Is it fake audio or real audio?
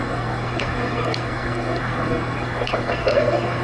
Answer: fake